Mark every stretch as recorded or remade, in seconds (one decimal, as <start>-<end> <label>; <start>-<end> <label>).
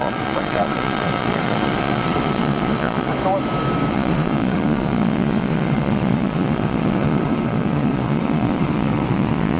0.0-3.1 remade; 3.1-3.9 recorded; 3.9-9.6 remade